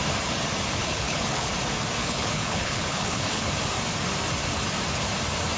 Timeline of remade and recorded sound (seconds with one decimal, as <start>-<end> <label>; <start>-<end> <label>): 0.0-0.8 recorded; 0.8-1.5 remade; 1.5-2.0 recorded; 2.0-3.5 remade; 3.5-5.6 recorded